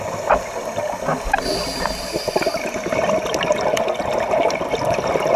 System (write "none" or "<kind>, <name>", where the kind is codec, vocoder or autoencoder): none